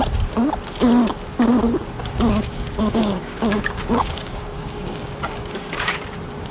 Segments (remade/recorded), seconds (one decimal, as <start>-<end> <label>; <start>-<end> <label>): 0.0-2.4 recorded; 2.4-6.0 remade; 6.0-6.5 recorded